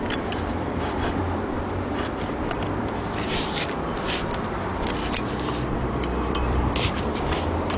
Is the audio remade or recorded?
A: remade